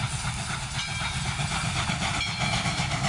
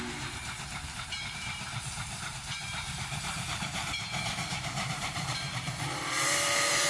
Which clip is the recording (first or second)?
first